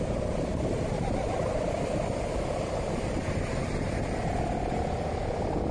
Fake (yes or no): no